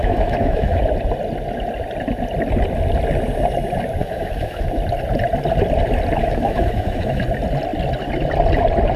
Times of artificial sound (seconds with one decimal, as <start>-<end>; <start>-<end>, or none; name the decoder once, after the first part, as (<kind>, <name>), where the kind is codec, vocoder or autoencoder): 0.0-0.8 (autoencoder, DAC-VAE); 4.0-4.8; 6.2-7.2